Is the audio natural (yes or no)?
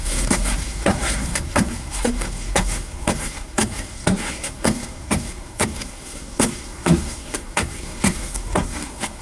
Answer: no